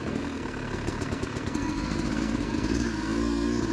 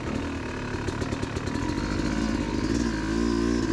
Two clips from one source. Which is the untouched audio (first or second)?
second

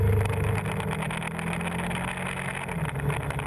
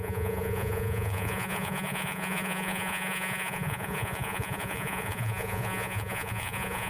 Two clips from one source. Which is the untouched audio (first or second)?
first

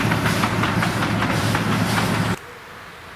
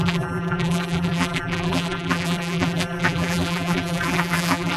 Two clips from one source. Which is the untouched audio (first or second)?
first